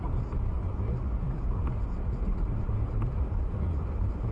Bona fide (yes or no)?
yes